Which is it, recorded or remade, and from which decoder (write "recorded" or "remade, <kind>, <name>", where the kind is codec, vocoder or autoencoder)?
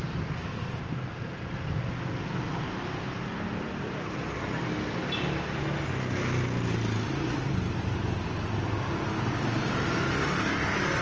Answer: recorded